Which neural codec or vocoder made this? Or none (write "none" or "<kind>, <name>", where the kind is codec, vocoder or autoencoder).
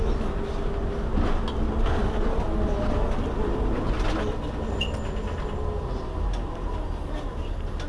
none